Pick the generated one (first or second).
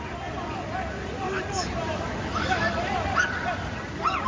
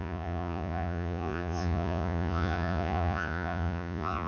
second